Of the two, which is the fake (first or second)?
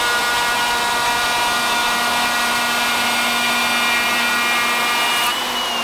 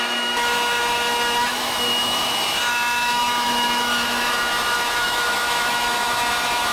second